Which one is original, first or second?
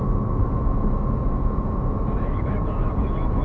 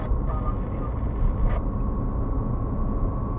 second